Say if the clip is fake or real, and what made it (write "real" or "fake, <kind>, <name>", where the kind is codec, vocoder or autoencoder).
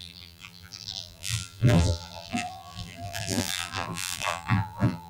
fake, vocoder, BigVGAN v2